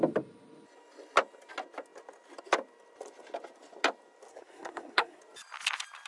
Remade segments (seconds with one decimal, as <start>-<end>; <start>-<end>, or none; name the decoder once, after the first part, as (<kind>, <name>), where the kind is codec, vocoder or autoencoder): 4.3-5.2 (codec, SNAC)

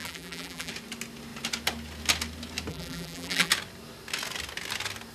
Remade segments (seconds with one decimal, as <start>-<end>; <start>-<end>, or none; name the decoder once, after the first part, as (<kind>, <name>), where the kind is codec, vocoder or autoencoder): 0.0-0.7 (vocoder, BigVGAN v2); 2.7-3.5

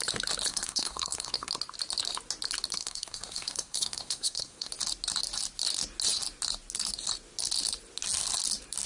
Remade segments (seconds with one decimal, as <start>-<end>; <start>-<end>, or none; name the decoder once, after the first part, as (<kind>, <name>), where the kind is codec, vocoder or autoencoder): 0.5-1.5 (codec, SNAC); 2.8-4.7

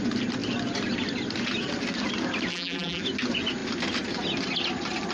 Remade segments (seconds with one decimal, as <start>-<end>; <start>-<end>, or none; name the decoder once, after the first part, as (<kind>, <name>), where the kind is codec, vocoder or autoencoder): 2.5-3.0 (vocoder, BigVGAN v2)

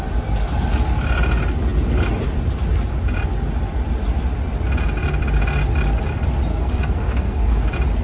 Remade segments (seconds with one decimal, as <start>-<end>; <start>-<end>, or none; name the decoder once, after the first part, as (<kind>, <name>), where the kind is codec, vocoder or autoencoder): 6.5-7.6 (codec, SNAC)

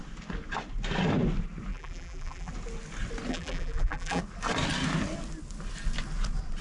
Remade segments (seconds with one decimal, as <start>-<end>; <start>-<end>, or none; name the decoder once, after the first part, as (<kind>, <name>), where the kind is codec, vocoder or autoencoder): 1.7-2.5 (vocoder, BigVGAN v2); 3.3-4.2

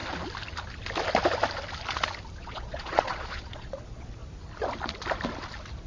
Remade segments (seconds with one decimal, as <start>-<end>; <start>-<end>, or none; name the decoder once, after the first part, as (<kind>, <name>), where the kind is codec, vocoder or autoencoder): 2.4-4.2 (vocoder, Vocos)